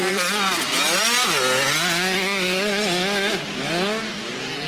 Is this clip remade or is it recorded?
recorded